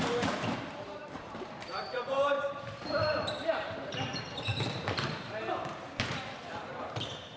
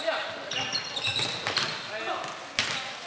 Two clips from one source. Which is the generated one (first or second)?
first